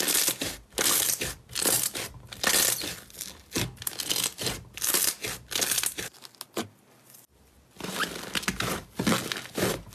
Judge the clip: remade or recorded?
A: recorded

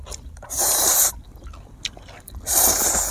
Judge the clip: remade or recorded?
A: recorded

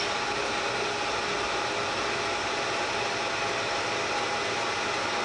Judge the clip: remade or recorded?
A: recorded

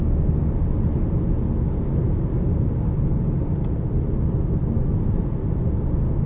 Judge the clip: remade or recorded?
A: recorded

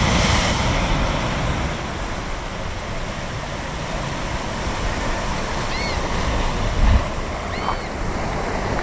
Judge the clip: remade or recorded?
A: recorded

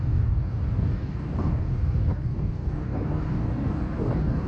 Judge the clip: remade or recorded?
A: remade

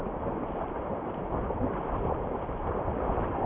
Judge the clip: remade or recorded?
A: recorded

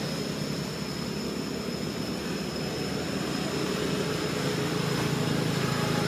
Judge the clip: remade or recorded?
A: recorded